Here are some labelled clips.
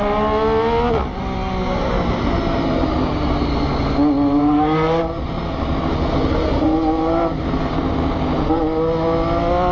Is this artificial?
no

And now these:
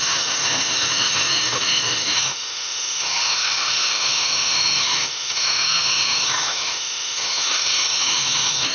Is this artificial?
yes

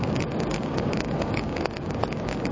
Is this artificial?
yes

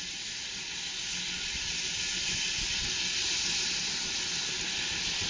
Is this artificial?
no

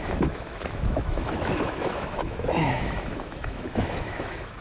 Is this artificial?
yes